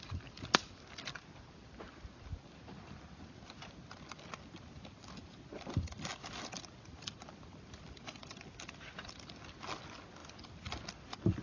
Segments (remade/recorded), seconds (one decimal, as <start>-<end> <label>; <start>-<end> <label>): 0.0-11.4 recorded